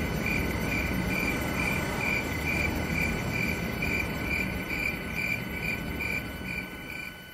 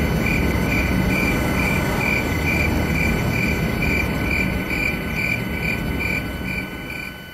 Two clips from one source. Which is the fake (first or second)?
first